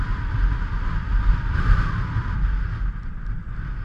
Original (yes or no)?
yes